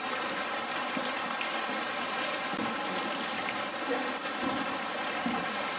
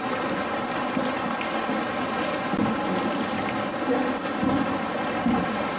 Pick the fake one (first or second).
first